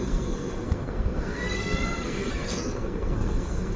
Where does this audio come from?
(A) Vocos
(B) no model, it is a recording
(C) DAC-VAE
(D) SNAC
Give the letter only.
D